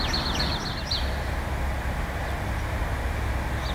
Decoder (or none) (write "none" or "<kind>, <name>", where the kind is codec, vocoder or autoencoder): none